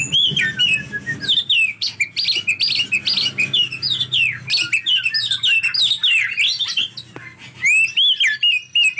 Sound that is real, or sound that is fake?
real